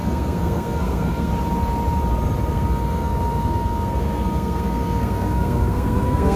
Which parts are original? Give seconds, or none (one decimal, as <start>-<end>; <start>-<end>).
1.3-2.5